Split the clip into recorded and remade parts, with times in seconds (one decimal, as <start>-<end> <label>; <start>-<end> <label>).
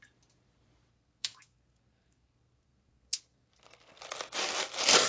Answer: 0.0-0.9 recorded; 0.9-4.0 remade; 4.0-5.1 recorded